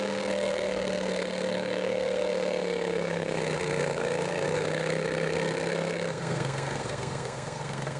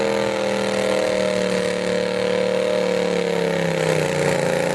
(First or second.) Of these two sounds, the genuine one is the second